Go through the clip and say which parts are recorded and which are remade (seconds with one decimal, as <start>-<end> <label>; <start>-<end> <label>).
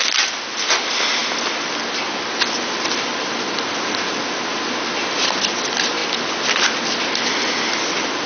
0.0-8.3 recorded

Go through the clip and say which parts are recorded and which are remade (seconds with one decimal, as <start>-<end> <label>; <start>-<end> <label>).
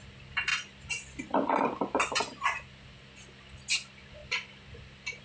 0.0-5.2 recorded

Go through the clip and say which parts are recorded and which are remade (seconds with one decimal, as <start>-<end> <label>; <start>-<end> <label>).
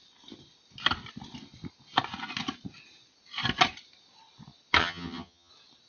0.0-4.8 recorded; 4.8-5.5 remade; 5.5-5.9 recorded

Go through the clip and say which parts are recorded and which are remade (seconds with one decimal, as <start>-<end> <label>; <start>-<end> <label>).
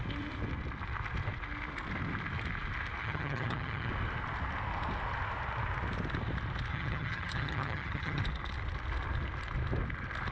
0.0-3.0 recorded; 3.0-3.9 remade; 3.9-6.7 recorded; 6.7-8.2 remade; 8.2-10.3 recorded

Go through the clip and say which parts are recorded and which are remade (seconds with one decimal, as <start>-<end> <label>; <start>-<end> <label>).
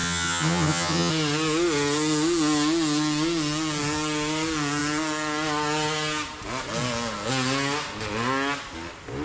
0.0-1.1 remade; 1.1-9.2 recorded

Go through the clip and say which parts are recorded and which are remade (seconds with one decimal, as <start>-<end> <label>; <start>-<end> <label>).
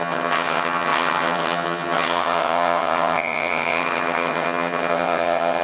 0.0-5.6 remade